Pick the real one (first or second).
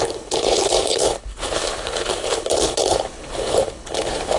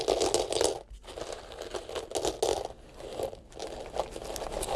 second